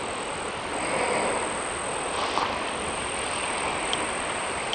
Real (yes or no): yes